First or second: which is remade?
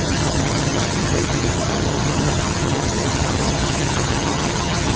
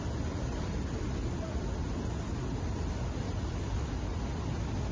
first